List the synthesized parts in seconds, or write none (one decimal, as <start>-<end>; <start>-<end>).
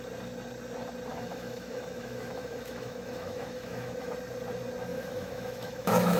1.1-4.1; 4.9-6.2